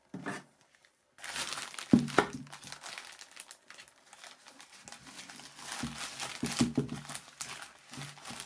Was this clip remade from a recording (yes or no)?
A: no